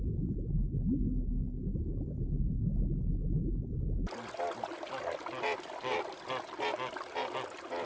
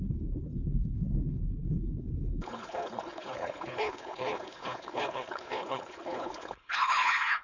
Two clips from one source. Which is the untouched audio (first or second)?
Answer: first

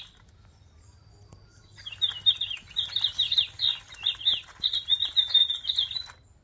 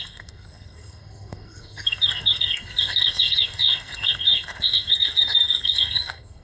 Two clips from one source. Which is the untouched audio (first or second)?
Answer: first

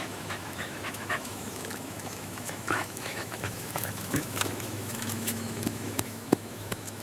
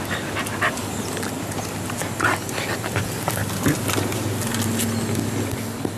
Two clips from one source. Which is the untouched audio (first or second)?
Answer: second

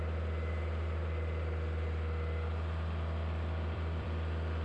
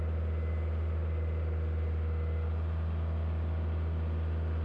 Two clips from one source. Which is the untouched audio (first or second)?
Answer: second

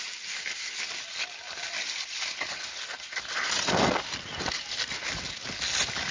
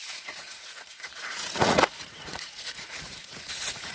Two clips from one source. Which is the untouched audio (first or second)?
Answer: first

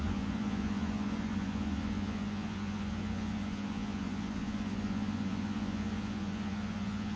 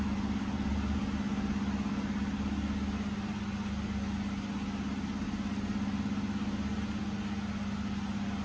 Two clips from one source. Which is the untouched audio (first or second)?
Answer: second